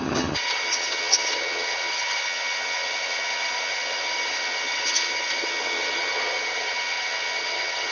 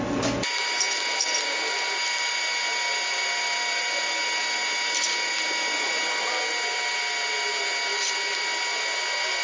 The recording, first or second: second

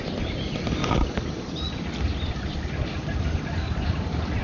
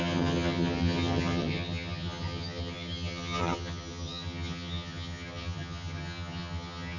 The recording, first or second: first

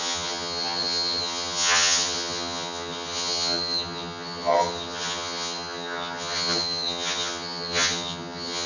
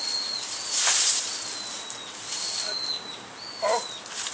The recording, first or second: second